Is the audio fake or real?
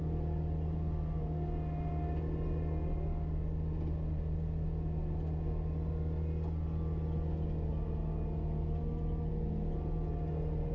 real